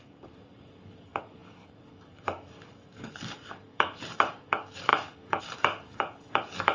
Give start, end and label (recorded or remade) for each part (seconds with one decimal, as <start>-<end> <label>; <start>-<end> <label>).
0.0-6.7 remade